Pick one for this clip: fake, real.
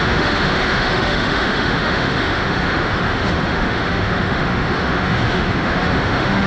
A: fake